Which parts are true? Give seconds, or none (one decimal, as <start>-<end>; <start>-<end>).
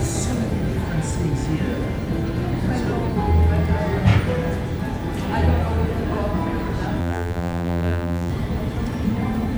0.0-7.0; 8.3-9.6